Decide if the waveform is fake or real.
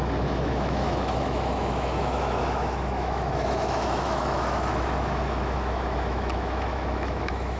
fake